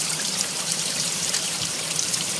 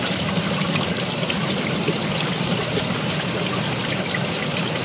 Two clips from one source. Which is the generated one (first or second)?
first